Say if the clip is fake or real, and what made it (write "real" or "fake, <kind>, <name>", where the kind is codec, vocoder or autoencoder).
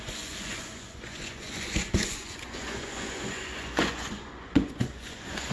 fake, vocoder, Vocos